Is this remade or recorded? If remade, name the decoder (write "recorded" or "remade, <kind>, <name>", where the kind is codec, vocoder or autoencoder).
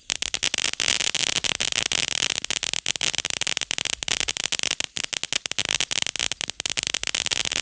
recorded